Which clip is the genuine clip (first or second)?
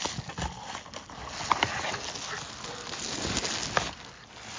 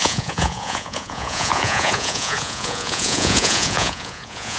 first